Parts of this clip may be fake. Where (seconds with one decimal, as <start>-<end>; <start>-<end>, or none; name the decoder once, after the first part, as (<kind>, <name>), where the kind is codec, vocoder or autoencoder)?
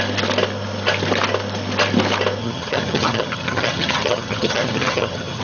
2.4-5.4 (vocoder, HiFi-GAN)